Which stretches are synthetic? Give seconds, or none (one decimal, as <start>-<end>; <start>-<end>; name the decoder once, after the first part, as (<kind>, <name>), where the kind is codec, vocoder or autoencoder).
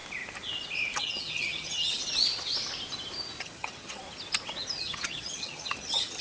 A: 1.0-2.0 (vocoder, HiFi-GAN); 3.4-4.0; 4.8-6.2